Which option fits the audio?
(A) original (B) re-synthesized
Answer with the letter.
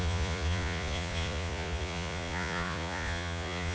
B